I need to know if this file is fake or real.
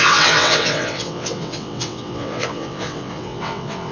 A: fake